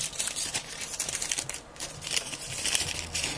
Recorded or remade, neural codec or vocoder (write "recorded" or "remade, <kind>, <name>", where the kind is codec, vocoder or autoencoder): recorded